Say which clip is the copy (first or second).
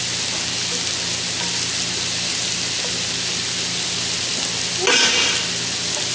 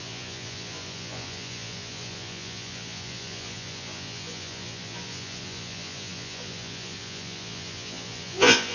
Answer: second